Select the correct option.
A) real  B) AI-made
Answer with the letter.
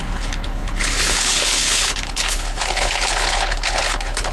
B